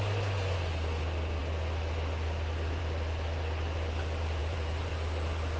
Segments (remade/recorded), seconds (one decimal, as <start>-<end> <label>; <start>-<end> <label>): 0.0-4.4 recorded; 4.4-4.9 remade; 4.9-5.6 recorded